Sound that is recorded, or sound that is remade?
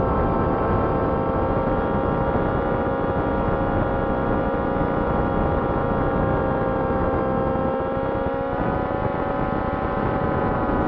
recorded